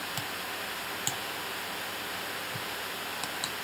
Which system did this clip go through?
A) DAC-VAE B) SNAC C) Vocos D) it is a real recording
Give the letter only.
D